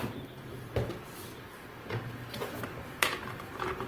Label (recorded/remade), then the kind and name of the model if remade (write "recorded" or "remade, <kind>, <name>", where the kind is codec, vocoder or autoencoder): remade, vocoder, BigVGAN v2